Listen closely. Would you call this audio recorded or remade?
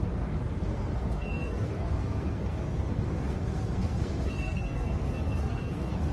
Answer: remade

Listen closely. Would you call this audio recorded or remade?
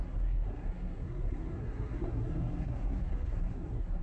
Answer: remade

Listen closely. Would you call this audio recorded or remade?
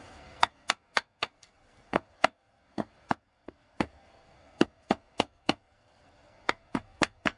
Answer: remade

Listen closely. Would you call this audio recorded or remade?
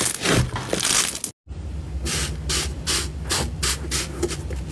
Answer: recorded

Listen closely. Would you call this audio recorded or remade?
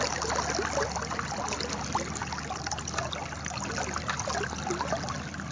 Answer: recorded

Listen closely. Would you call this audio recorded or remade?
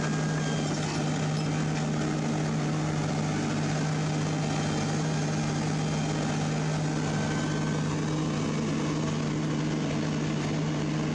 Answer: recorded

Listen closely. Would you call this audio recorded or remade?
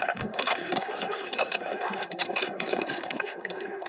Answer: remade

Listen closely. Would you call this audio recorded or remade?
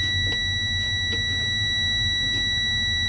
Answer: recorded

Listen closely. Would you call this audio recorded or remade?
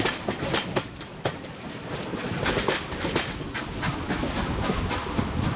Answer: recorded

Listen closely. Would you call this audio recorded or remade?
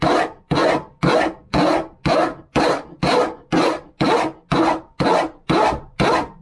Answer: recorded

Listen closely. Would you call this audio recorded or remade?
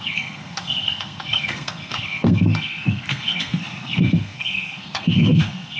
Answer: remade